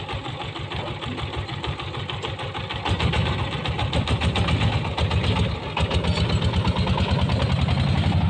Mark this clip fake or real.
real